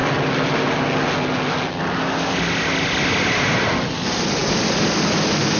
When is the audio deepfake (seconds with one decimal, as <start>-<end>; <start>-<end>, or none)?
none